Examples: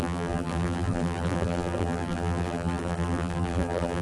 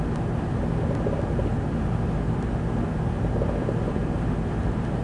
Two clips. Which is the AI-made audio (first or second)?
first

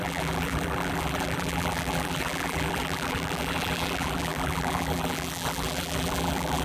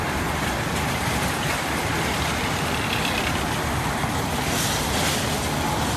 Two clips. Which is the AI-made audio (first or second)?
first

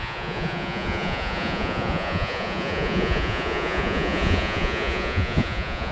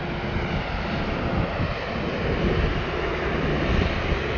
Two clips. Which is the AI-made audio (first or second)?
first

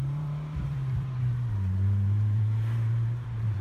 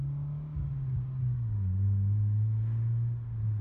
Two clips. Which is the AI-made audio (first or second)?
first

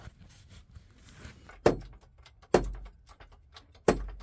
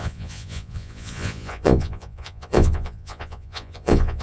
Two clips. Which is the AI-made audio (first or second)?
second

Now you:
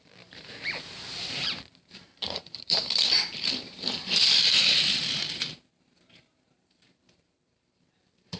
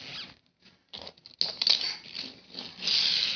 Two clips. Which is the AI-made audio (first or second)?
first